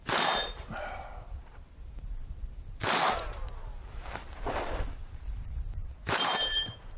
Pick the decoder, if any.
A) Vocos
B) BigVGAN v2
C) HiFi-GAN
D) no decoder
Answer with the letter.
B